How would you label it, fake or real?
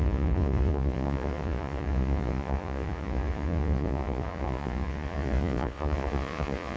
fake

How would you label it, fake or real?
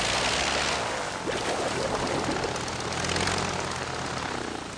real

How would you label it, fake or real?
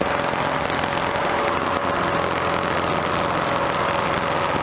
real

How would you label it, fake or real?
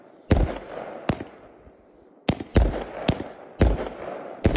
real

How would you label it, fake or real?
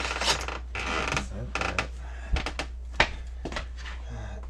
real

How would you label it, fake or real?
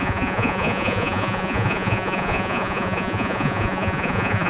fake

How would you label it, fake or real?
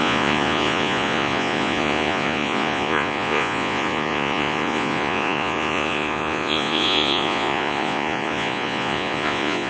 fake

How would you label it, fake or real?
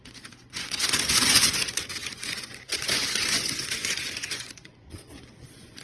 fake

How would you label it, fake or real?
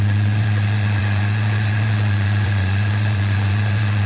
fake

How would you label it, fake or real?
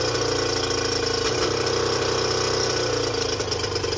real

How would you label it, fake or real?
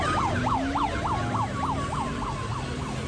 real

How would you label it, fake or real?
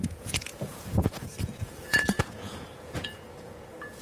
fake